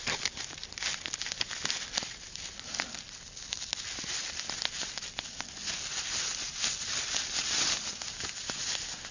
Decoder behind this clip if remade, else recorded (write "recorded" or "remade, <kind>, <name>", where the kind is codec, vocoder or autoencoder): recorded